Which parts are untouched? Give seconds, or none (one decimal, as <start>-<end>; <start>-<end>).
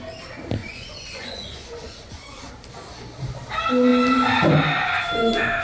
0.0-0.6; 2.5-5.6